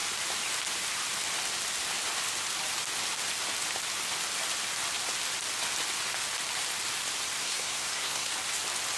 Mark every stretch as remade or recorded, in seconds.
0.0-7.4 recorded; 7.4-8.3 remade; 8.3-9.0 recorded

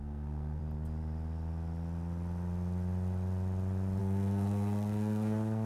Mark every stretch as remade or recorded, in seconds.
0.0-0.6 remade; 0.6-4.0 recorded; 4.0-5.7 remade

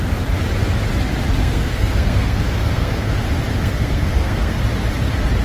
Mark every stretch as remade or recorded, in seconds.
0.0-1.4 recorded; 1.4-3.1 remade; 3.1-3.6 recorded; 3.6-4.6 remade; 4.6-5.4 recorded

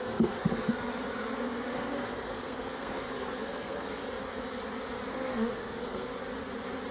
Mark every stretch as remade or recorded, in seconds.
0.0-0.7 remade; 0.7-1.7 recorded; 1.7-4.0 remade; 4.0-5.1 recorded; 5.1-6.1 remade; 6.1-6.9 recorded